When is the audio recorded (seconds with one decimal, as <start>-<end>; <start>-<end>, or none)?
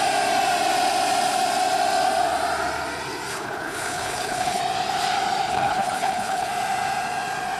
0.0-3.3; 4.6-5.5; 6.5-7.6